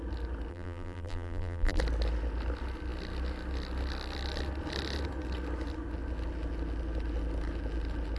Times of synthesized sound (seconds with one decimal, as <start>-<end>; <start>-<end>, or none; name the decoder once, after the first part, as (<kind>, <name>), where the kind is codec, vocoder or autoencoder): 0.5-1.8 (vocoder, BigVGAN v2)